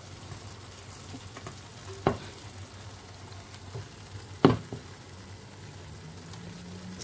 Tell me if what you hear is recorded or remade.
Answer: recorded